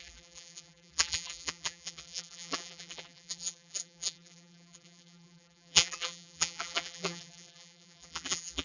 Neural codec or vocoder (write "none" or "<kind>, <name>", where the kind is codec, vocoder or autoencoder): vocoder, BigVGAN v2